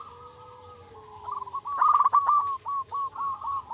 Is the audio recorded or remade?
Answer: recorded